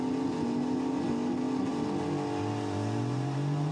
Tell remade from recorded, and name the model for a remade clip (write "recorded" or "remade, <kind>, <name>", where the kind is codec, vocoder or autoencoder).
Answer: recorded